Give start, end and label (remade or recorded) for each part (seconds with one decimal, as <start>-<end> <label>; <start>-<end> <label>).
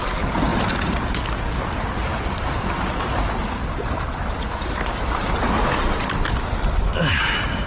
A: 0.0-7.7 recorded